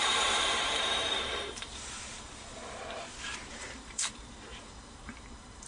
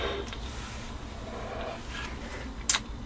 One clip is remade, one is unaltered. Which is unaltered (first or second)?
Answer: second